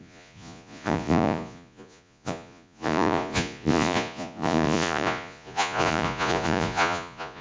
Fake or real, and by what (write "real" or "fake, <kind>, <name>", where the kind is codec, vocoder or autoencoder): fake, vocoder, Vocos